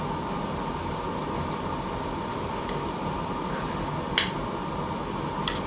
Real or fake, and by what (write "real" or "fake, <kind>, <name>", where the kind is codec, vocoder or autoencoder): real